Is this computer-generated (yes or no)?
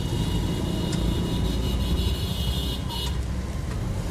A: no